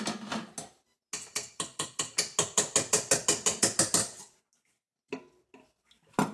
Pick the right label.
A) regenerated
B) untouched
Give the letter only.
B